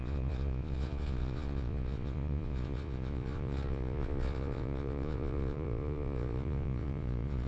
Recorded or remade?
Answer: remade